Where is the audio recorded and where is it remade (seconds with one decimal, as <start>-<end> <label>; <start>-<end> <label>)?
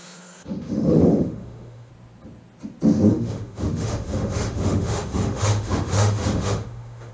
0.0-1.9 remade; 1.9-3.1 recorded; 3.1-7.1 remade